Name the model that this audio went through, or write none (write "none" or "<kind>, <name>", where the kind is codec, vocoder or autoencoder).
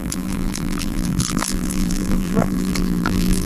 vocoder, BigVGAN v2